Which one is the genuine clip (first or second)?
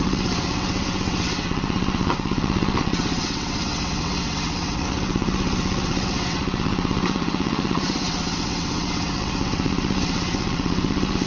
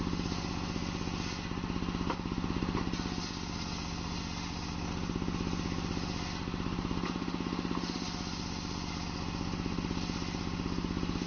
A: second